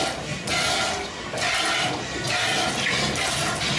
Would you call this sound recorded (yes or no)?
yes